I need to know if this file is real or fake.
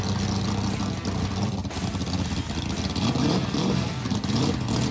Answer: real